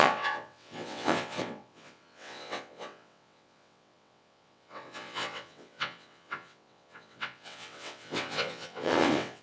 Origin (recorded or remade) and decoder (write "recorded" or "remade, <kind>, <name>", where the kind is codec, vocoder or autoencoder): remade, vocoder, WaveNeXt